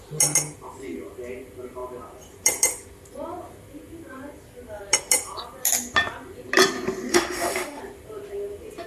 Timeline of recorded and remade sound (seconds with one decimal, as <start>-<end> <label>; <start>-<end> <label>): 0.0-7.1 recorded; 7.1-7.8 remade; 7.8-8.9 recorded